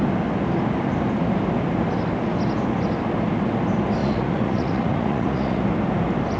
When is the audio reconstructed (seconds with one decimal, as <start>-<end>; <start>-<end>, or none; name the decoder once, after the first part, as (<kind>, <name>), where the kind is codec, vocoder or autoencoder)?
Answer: 4.0-5.6 (vocoder, Vocos)

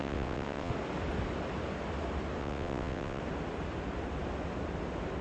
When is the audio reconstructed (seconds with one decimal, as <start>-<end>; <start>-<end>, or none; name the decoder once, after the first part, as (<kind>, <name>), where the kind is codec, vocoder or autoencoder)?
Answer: 0.0-0.7 (vocoder, WaveNeXt); 2.4-3.2

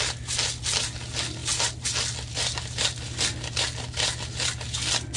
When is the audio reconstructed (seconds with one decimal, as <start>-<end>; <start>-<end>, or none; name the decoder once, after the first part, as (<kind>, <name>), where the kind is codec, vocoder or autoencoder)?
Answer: none

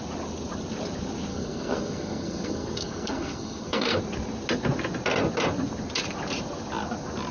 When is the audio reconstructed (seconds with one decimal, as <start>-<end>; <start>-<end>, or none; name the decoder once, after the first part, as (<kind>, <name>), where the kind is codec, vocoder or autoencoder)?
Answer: 1.3-4.0 (codec, SNAC)

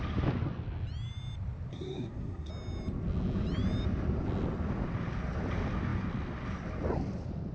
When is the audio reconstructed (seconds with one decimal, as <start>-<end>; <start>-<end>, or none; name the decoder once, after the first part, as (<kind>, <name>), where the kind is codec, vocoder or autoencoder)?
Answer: 1.7-2.5 (codec, SNAC)

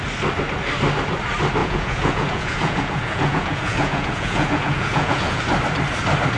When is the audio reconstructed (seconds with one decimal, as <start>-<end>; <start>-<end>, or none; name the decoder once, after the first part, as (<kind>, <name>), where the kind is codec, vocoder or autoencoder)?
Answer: 1.6-5.4 (vocoder, Vocos)

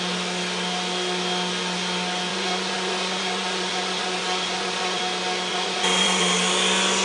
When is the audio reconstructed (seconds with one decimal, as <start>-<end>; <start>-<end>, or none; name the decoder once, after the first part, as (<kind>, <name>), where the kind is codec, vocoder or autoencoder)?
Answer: 2.3-5.0 (vocoder, Vocos); 5.5-6.2

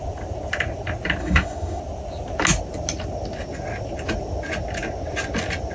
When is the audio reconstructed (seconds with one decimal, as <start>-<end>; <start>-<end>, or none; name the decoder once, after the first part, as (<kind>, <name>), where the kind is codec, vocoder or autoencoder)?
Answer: 1.2-1.8 (autoencoder, DAC-VAE)